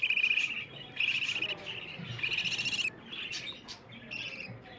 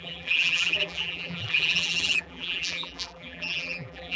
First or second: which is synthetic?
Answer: second